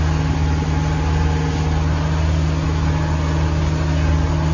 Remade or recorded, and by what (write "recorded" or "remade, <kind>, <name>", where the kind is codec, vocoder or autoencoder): recorded